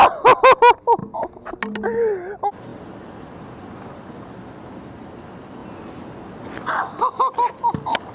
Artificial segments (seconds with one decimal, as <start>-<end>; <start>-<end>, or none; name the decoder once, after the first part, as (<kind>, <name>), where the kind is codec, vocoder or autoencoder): none